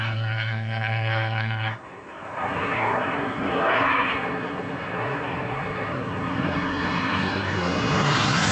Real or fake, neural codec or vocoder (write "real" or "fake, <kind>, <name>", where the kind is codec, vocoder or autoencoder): fake, codec, SNAC